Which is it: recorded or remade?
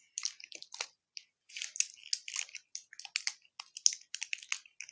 recorded